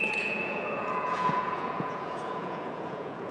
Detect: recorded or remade remade